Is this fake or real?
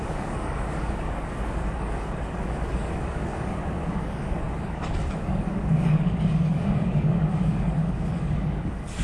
fake